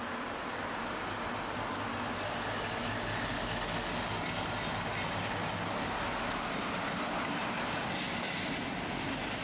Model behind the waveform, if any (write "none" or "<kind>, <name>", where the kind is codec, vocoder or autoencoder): none